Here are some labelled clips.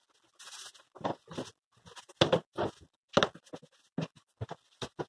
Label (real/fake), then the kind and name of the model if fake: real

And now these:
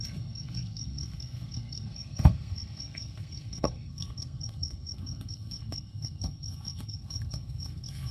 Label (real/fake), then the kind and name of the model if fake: fake, codec, SNAC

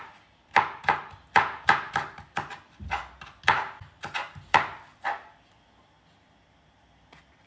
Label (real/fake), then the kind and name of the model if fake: real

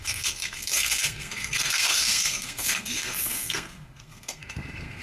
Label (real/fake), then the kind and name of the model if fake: fake, codec, SNAC